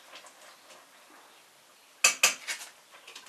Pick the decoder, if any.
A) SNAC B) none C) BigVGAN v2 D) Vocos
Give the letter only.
B